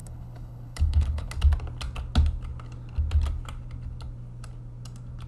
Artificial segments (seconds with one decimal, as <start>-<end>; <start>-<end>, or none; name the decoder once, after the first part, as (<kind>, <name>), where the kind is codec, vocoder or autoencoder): 0.0-1.3 (codec, HILCodec)